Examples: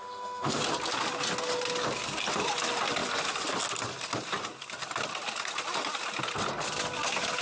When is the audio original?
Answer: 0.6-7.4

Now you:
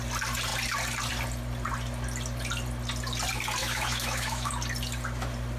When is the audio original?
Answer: 0.0-3.6; 4.5-5.6

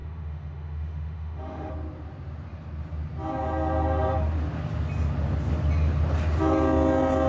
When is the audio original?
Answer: 1.7-7.3

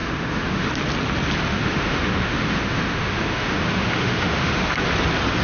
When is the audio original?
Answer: 0.7-1.5; 4.7-5.4

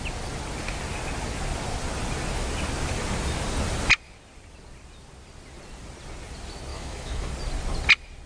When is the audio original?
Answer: 0.0-6.7; 7.3-8.3

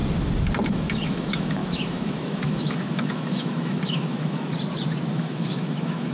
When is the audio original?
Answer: 0.0-0.7; 4.5-5.1